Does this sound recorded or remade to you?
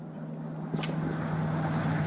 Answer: recorded